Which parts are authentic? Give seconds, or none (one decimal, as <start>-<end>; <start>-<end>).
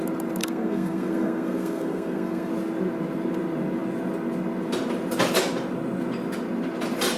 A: 0.0-0.4; 2.5-7.2